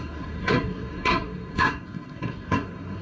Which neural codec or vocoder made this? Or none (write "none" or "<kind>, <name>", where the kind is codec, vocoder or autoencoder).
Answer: codec, SNAC